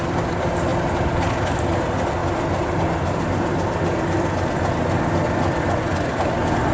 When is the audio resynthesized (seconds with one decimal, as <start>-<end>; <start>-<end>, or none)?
none